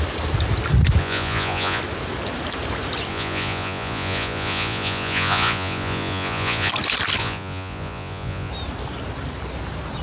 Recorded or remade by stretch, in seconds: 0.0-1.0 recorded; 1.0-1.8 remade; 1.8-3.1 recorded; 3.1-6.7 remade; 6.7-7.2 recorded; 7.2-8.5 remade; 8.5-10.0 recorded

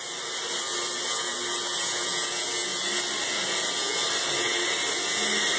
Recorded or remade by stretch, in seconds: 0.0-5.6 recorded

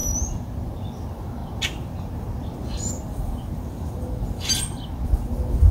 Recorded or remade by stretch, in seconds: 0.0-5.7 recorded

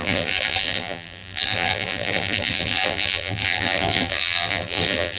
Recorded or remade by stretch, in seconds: 0.0-5.2 remade

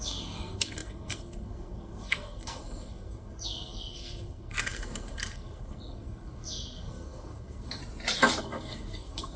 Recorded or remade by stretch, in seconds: 0.0-7.8 remade; 7.8-8.4 recorded; 8.4-9.4 remade